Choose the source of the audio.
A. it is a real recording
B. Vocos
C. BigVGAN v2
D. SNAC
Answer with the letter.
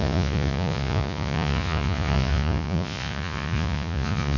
B